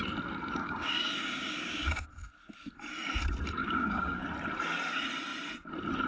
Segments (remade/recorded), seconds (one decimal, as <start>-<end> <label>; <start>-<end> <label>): 0.0-0.6 recorded; 0.6-2.0 remade; 2.0-3.6 recorded; 3.6-4.2 remade; 4.2-6.1 recorded